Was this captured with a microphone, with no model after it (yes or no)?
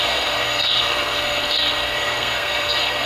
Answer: no